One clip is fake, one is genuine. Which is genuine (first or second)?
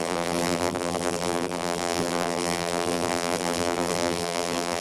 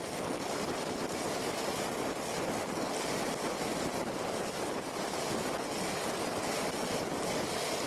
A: second